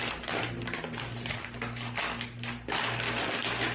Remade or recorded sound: recorded